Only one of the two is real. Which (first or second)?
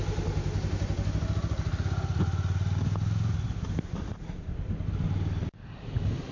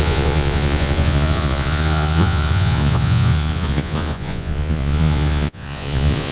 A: first